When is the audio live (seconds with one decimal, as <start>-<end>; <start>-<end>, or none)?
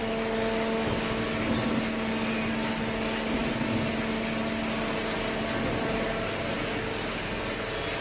0.0-8.0